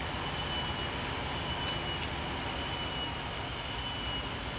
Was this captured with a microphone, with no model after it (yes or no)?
yes